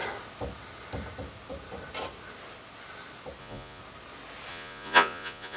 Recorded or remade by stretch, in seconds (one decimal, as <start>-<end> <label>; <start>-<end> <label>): 0.0-3.4 recorded; 3.4-3.8 remade; 3.8-4.5 recorded; 4.5-5.6 remade